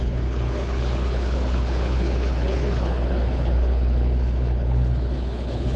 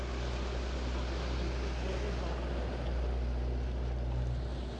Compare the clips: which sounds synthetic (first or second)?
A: first